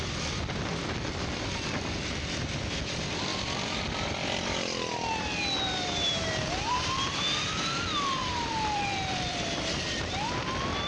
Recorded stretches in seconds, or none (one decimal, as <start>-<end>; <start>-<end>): 0.0-3.3; 7.2-8.2; 10.0-10.9